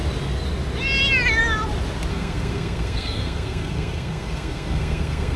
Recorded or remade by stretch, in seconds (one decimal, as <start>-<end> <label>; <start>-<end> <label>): 0.0-2.1 recorded; 2.1-5.4 remade